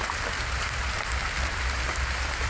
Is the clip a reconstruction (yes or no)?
yes